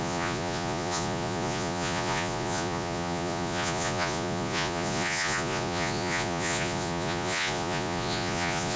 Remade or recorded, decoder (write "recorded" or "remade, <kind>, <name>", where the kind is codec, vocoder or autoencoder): remade, vocoder, Vocos